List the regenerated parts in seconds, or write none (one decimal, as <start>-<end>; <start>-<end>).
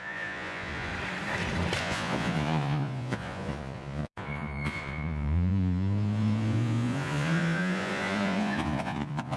0.0-0.9; 1.8-9.4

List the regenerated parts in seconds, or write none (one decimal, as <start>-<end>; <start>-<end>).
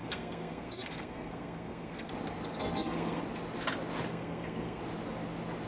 0.0-2.1; 2.6-3.2; 4.1-4.8